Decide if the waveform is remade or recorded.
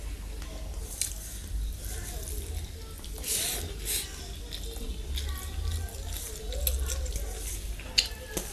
recorded